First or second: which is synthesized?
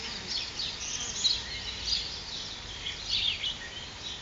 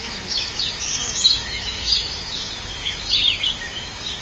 second